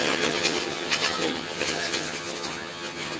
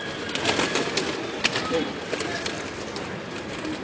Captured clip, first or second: second